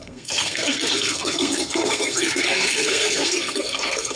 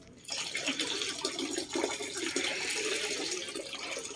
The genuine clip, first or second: second